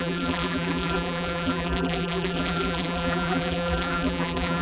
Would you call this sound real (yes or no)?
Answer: no